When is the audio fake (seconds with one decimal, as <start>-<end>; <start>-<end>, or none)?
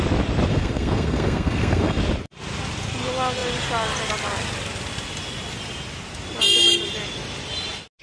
0.5-2.0